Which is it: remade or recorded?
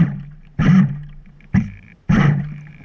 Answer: remade